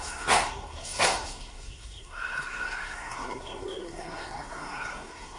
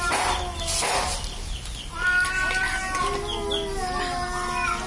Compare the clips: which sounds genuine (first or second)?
second